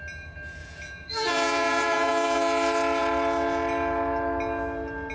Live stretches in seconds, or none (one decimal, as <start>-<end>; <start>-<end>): 0.0-0.6; 2.4-5.1